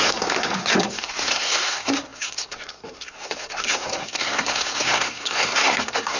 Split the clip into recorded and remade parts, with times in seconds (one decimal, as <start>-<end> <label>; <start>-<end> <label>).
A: 0.0-6.2 remade